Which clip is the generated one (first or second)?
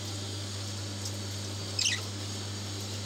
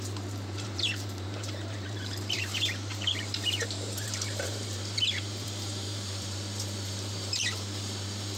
second